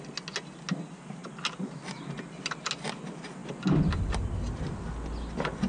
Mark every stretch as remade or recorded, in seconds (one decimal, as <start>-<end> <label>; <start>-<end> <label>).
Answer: 0.0-5.7 recorded